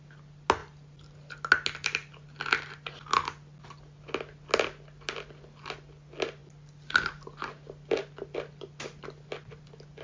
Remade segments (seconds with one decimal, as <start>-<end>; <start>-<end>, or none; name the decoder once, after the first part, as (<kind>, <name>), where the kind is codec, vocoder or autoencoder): none